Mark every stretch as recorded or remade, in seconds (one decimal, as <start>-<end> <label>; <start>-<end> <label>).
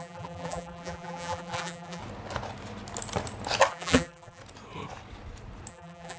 0.0-2.0 remade; 2.0-3.7 recorded; 3.7-4.4 remade; 4.4-5.7 recorded; 5.7-6.2 remade